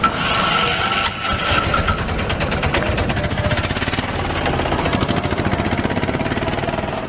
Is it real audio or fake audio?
real